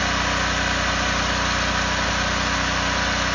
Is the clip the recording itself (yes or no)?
yes